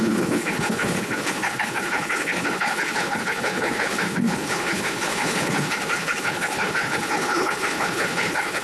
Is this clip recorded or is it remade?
remade